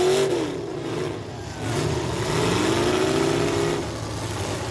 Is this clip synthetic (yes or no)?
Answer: no